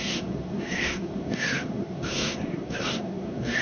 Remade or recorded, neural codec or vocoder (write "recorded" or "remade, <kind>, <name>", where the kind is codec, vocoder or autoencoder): remade, codec, SNAC